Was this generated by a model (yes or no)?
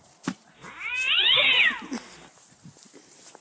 no